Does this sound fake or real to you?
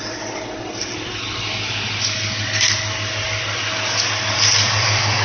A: real